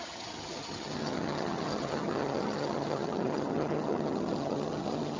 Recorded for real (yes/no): no